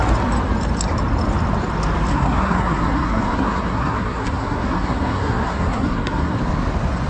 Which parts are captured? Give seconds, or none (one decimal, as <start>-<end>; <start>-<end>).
0.0-2.1; 6.4-7.1